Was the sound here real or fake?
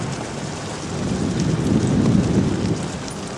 real